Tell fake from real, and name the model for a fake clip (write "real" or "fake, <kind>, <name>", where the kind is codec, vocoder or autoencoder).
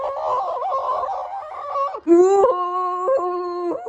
real